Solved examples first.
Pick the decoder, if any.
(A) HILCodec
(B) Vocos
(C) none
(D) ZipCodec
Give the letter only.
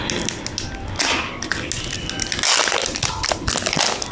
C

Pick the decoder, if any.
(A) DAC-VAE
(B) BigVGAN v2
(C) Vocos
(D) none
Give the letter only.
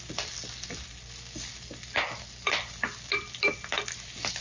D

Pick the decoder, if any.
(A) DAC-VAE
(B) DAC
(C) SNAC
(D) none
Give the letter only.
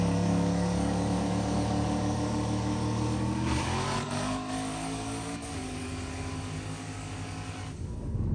B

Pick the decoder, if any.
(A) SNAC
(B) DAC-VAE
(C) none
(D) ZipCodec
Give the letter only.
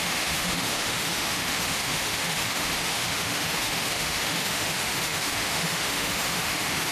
B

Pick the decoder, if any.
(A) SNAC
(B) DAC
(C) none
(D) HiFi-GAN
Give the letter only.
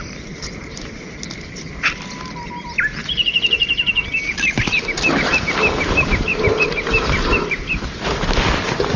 C